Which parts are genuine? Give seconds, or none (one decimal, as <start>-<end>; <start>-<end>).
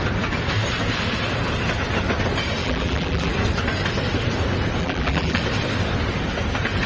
0.0-2.6; 3.3-4.8; 5.4-6.9